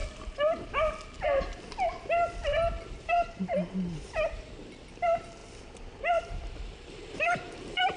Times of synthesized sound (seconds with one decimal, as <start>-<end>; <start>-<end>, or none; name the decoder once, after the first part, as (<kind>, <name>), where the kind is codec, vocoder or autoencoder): 2.9-8.0 (vocoder, BigVGAN v2)